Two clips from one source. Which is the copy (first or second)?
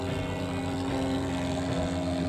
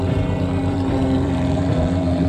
second